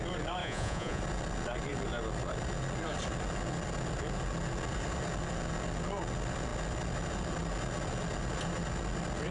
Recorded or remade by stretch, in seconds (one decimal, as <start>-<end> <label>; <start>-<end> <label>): 0.0-0.4 recorded; 0.4-1.0 remade; 1.0-9.3 recorded